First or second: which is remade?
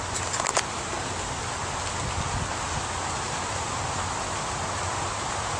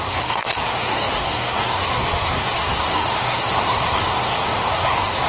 second